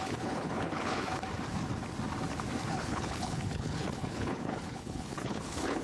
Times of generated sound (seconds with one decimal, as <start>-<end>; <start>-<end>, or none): 0.0-1.1; 2.7-5.8